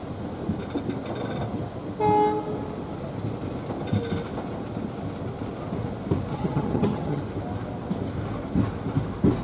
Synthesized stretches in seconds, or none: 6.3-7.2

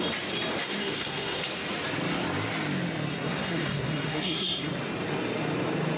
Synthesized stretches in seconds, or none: 0.6-1.4; 3.1-4.7

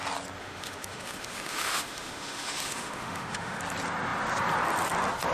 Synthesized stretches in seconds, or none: 0.4-3.6

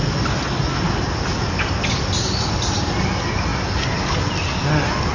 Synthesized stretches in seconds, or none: none

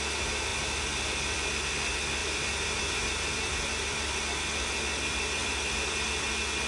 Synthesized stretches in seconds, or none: 0.5-1.5; 2.2-4.2; 5.4-6.3

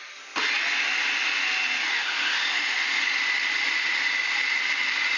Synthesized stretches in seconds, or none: 1.9-3.2

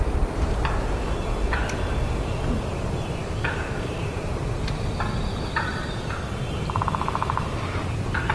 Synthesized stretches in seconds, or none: 3.2-4.0